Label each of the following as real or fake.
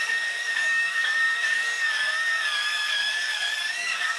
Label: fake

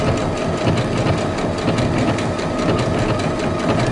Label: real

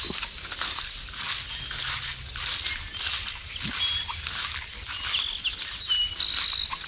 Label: real